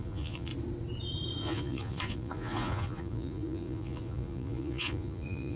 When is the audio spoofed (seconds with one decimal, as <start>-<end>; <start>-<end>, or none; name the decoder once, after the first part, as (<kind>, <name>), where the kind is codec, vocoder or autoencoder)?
0.0-0.5 (vocoder, Vocos); 1.4-5.6